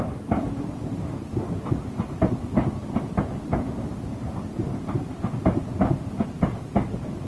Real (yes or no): no